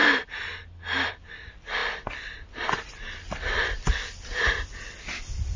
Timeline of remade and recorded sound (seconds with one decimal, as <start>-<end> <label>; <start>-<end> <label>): 0.0-5.6 recorded